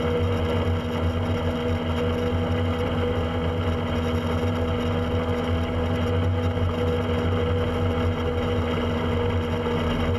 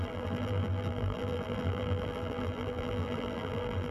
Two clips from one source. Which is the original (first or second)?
first